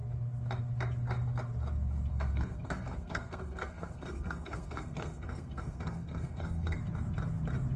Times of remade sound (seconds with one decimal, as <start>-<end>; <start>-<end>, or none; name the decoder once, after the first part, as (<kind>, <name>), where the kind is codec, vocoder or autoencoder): 2.1-6.8 (codec, SNAC)